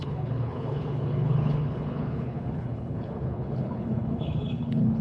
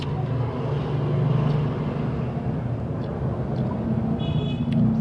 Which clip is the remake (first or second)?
first